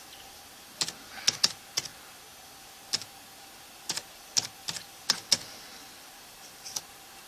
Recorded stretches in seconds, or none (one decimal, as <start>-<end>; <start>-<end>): 0.0-7.3